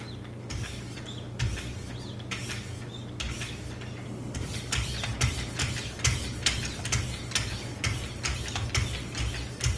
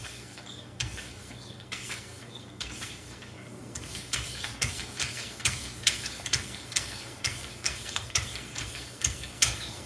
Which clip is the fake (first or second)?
second